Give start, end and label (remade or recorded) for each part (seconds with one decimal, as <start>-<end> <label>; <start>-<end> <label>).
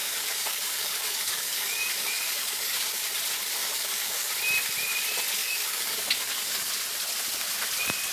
0.0-3.0 remade; 3.0-3.6 recorded; 3.6-4.3 remade; 4.3-5.4 recorded; 5.4-6.7 remade; 6.7-8.1 recorded